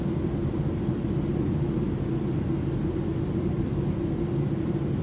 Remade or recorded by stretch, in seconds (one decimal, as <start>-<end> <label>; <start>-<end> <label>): 0.0-5.0 recorded